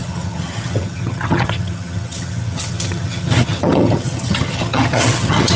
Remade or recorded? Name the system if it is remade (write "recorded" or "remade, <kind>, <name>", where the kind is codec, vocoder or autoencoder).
remade, vocoder, HiFi-GAN